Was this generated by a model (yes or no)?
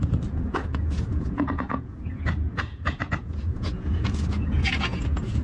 yes